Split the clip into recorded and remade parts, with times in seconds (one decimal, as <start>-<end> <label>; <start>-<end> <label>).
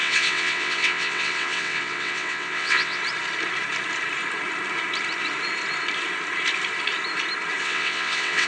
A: 0.0-3.0 remade; 3.0-7.6 recorded; 7.6-8.5 remade